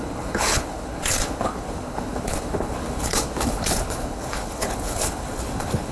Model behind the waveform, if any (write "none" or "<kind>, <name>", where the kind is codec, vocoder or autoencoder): codec, HILCodec